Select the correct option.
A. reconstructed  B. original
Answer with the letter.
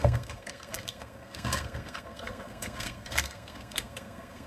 A